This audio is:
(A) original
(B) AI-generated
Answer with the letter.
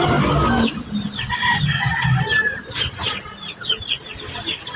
A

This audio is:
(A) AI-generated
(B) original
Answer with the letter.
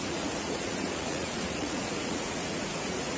A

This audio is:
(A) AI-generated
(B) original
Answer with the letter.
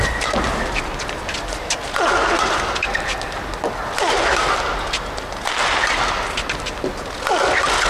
B